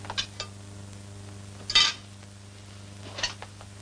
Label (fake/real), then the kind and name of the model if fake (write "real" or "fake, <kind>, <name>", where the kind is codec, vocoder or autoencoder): real